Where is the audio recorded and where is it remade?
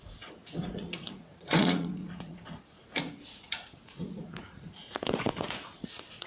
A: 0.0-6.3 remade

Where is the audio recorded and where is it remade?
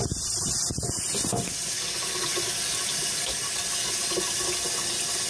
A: 0.0-5.3 recorded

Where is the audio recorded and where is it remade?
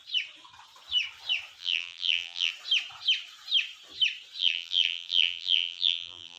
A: 0.0-1.6 recorded; 1.6-2.5 remade; 2.5-4.4 recorded; 4.4-6.4 remade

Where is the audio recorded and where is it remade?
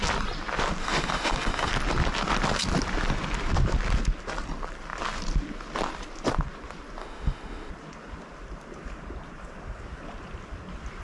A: 0.0-0.8 recorded; 0.8-1.7 remade; 1.7-7.0 recorded; 7.0-7.7 remade; 7.7-11.0 recorded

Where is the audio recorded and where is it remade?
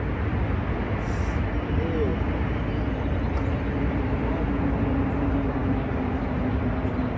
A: 0.0-7.2 recorded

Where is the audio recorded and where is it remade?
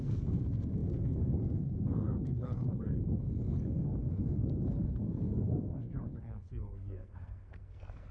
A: 0.0-8.1 remade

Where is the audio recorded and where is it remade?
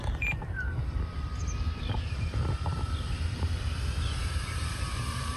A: 0.0-5.4 remade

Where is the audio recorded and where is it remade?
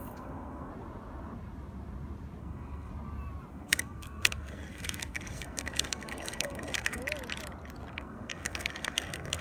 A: 0.0-0.7 remade; 0.7-2.4 recorded; 2.4-2.9 remade; 2.9-3.5 recorded; 3.5-7.0 remade; 7.0-7.9 recorded; 7.9-9.4 remade